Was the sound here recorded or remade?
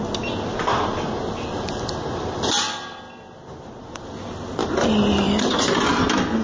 recorded